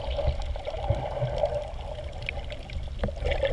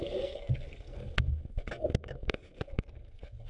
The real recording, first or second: first